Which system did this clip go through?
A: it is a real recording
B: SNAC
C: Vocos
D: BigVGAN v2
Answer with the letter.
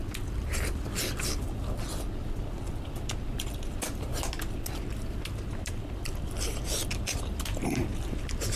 A